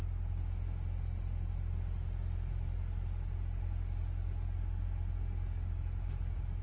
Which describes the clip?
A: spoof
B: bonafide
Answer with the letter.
B